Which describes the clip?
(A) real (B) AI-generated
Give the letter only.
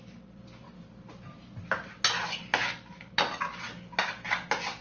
A